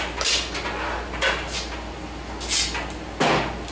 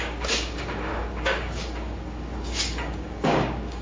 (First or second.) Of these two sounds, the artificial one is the second